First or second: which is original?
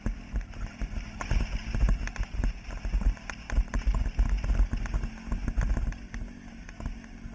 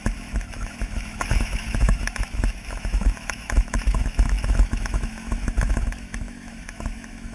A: first